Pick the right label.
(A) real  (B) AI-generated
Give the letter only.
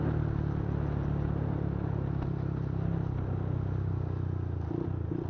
A